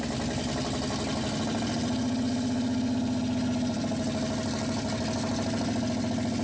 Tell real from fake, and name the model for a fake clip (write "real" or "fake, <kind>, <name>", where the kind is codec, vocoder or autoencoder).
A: real